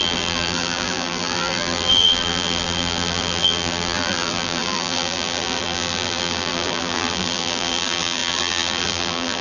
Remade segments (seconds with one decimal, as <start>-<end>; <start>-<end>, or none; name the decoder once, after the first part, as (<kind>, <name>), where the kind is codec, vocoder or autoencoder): 0.0-9.4 (vocoder, BigVGAN v2)